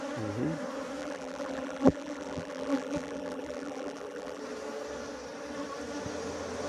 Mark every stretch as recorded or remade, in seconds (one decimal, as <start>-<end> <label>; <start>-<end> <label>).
0.0-1.0 recorded; 1.0-4.4 remade; 4.4-6.7 recorded